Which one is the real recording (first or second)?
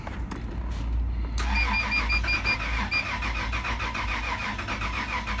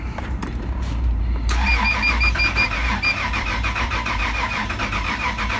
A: first